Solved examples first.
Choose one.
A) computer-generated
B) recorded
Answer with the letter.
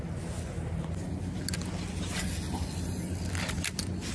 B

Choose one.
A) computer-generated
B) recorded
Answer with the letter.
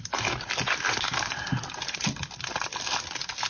B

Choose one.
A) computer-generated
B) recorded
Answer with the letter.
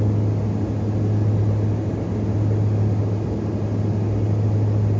B